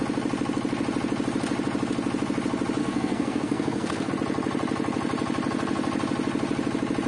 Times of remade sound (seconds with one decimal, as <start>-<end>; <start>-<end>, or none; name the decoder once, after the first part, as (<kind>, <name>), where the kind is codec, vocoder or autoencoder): 2.8-4.1 (codec, SNAC)